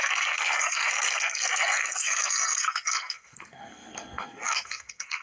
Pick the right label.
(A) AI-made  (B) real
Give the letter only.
A